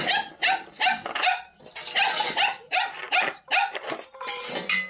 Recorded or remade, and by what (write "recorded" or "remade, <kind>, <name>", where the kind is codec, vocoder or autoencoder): recorded